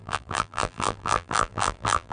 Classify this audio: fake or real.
fake